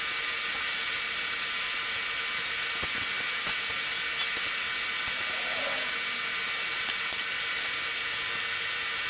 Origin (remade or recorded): recorded